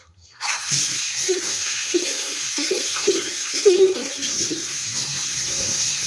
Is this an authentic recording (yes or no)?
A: no